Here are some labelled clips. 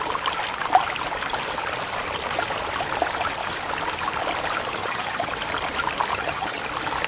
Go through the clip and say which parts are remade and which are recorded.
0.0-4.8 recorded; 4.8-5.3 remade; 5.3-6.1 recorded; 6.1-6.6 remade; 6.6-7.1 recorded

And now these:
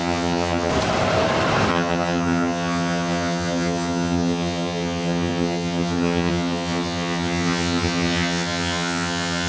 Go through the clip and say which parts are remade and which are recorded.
0.0-0.7 remade; 0.7-1.7 recorded; 1.7-9.5 remade

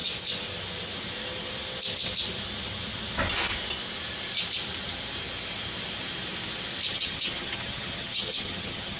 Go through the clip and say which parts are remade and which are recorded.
0.0-6.9 recorded; 6.9-9.0 remade

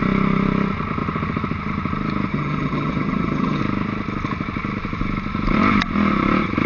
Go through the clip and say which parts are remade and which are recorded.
0.0-2.3 recorded; 2.3-3.6 remade; 3.6-6.7 recorded

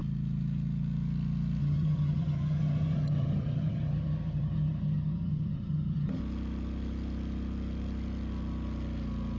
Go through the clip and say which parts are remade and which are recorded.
0.0-1.6 recorded; 1.6-6.2 remade; 6.2-9.4 recorded

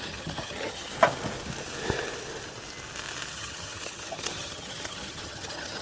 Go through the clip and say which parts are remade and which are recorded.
0.0-0.9 remade; 0.9-3.3 recorded; 3.3-5.8 remade

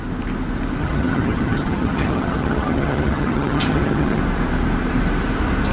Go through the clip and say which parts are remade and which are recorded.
0.0-0.8 recorded; 0.8-4.2 remade; 4.2-5.7 recorded